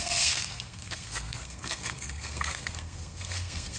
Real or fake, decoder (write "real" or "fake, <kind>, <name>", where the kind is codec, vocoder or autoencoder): fake, codec, SNAC